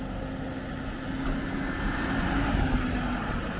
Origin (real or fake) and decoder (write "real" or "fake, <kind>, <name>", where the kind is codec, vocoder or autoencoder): real